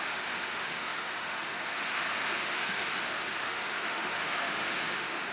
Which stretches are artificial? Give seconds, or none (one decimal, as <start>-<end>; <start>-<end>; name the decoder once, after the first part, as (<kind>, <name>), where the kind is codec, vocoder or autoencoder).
0.0-5.3 (autoencoder, DAC-VAE)